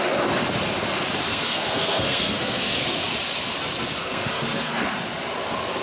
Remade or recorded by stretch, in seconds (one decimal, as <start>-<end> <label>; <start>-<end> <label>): 0.0-1.3 recorded; 1.3-2.9 remade; 2.9-4.0 recorded; 4.0-4.8 remade; 4.8-5.8 recorded